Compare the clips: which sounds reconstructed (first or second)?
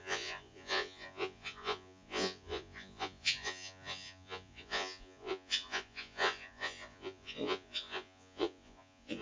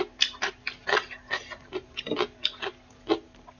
first